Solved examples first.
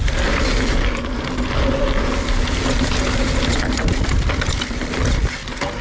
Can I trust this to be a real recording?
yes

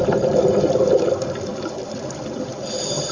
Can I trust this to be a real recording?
yes